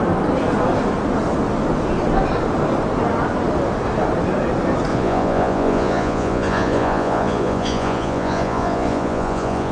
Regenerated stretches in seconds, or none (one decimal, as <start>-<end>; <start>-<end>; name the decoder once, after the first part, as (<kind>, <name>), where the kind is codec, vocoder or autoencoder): 4.9-9.7 (vocoder, Vocos)

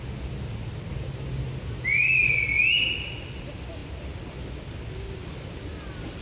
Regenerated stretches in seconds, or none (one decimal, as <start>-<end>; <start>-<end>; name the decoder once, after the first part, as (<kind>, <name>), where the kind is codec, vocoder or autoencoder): none

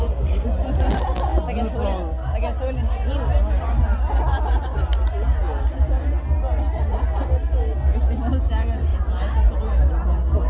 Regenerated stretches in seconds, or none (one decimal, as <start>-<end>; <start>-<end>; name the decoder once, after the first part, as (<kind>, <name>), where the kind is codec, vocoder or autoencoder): 8.9-9.5 (vocoder, Vocos)

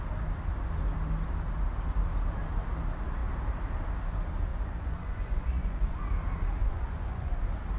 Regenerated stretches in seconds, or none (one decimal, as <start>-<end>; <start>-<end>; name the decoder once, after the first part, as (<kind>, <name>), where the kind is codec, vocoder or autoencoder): 4.5-6.0 (vocoder, Vocos); 6.6-7.3

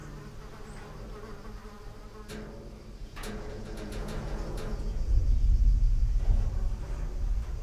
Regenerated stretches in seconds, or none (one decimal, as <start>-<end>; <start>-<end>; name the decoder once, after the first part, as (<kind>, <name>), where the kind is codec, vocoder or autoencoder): 3.0-6.5 (vocoder, Vocos)

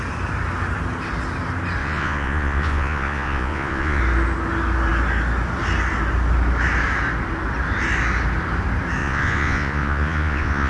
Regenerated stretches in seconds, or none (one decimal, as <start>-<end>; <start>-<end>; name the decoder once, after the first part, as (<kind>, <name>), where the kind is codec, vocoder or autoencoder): 1.8-4.0 (vocoder, Vocos); 9.0-10.7

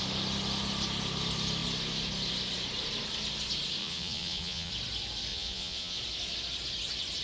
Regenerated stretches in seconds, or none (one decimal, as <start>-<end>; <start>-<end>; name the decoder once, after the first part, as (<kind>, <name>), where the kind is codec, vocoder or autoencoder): 3.8-4.7 (vocoder, Vocos); 5.3-6.0

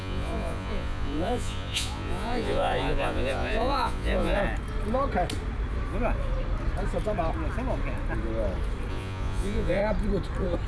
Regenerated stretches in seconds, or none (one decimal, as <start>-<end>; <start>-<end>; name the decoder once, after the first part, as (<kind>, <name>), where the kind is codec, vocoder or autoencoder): 0.0-4.4 (vocoder, Vocos); 8.9-9.8